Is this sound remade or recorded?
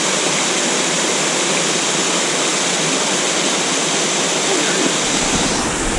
recorded